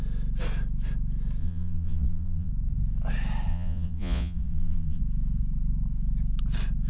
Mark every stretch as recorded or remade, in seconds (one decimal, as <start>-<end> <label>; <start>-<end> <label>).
0.0-1.4 recorded; 1.4-2.5 remade; 2.5-3.5 recorded; 3.5-5.0 remade; 5.0-6.9 recorded